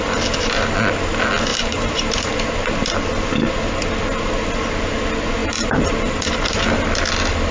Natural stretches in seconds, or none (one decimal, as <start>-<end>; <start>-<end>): 0.0-1.5; 2.3-5.4; 6.9-7.5